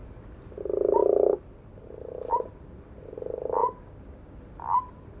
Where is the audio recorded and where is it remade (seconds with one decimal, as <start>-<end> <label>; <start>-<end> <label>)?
0.0-3.6 recorded; 3.6-4.4 remade; 4.4-5.2 recorded